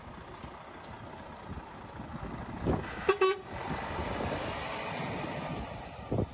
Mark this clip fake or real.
real